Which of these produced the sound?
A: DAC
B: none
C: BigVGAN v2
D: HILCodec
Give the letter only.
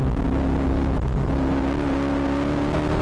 B